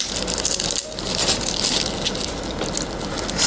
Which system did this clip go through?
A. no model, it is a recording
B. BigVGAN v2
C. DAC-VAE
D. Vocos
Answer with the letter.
A